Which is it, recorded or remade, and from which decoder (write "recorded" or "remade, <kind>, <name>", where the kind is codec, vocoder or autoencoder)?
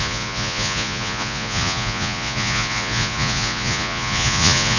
remade, vocoder, Vocos